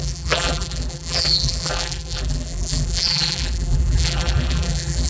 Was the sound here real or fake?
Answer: fake